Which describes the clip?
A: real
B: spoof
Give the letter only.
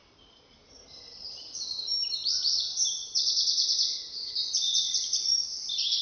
B